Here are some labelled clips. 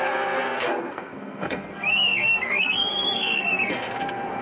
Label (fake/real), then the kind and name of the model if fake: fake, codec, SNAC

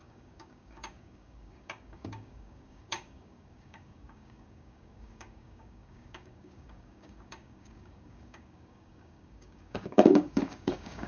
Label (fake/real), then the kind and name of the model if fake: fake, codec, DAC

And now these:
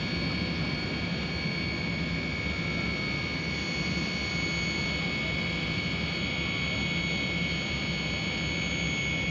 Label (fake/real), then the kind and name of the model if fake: real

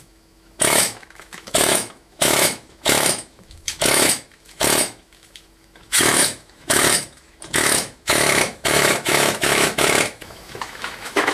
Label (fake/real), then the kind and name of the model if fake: fake, autoencoder, DAC-VAE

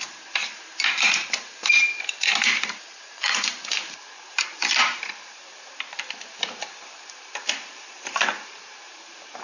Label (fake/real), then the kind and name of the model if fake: fake, vocoder, BigVGAN v2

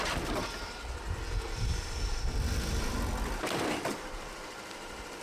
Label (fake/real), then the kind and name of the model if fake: fake, vocoder, BigVGAN v2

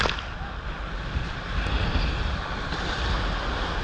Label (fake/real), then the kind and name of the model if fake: real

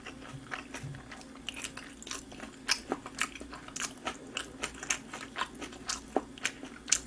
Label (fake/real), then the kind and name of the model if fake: real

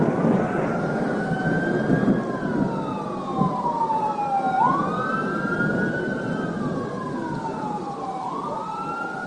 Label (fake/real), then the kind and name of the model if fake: real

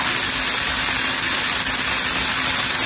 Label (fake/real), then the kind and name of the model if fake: real